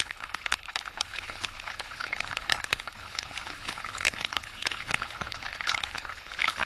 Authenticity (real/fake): fake